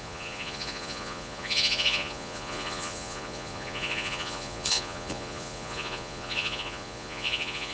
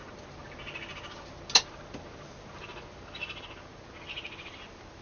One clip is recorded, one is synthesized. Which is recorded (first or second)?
second